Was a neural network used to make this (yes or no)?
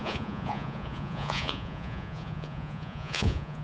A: yes